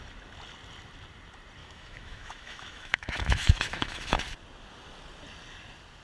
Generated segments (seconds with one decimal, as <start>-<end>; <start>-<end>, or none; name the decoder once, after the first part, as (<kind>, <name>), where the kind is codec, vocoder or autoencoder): 1.6-4.2 (autoencoder, DAC-VAE)